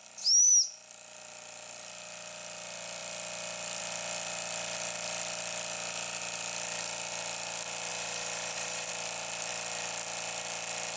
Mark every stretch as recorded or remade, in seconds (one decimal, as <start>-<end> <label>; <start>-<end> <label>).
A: 0.0-7.9 recorded; 7.9-8.9 remade; 8.9-11.0 recorded